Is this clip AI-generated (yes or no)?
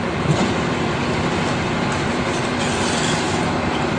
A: yes